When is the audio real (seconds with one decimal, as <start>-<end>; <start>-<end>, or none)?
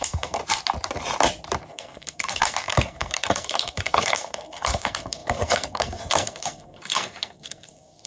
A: 0.4-1.7